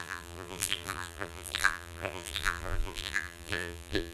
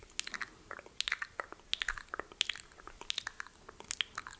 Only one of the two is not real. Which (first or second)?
first